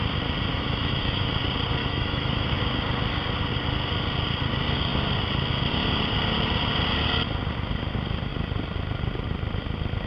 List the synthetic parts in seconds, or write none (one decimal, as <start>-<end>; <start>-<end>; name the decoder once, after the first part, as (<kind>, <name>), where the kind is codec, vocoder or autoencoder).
0.5-1.3 (autoencoder, DAC-VAE); 1.8-2.6